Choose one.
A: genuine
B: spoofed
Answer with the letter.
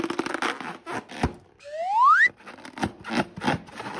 A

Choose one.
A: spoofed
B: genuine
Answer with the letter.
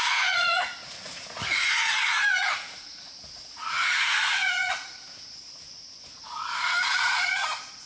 A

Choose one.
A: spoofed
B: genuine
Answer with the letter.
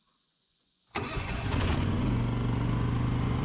A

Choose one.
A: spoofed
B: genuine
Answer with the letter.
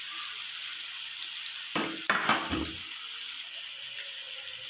B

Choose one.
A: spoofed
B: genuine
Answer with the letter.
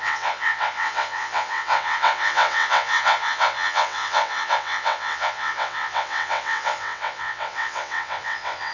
A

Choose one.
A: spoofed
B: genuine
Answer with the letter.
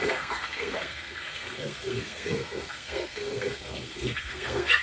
A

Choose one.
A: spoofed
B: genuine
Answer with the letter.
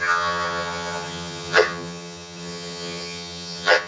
A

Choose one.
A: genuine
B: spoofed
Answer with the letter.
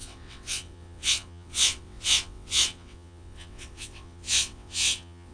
B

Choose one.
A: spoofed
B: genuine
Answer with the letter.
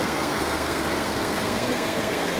A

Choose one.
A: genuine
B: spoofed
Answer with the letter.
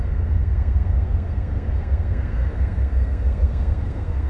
B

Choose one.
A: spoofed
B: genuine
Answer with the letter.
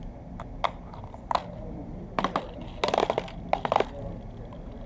B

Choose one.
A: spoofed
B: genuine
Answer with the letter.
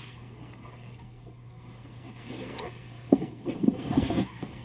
A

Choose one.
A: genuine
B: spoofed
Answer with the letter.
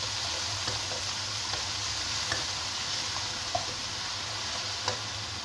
A